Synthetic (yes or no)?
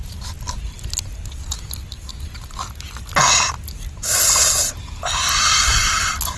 no